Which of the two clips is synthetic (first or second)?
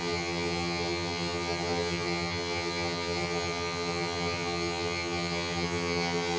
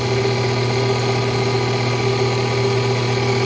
first